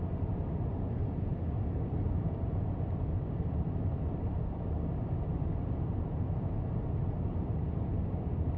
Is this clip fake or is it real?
real